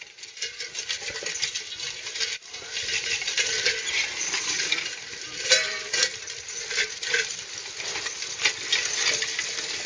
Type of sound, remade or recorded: remade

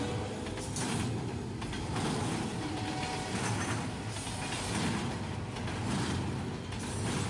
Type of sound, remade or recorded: recorded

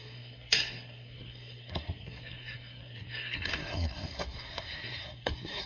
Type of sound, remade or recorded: remade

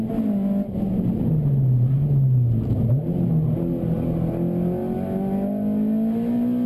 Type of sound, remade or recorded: recorded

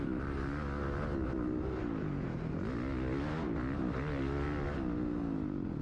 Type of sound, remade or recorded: recorded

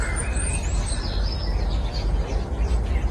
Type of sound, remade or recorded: recorded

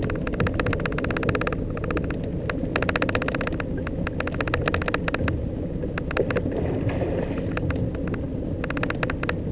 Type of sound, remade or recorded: recorded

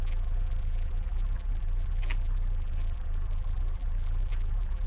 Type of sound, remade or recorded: remade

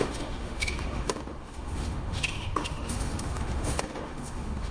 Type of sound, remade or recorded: remade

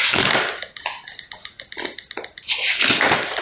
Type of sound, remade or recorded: recorded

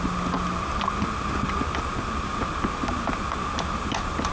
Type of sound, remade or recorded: recorded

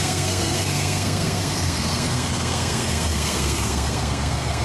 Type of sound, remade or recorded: remade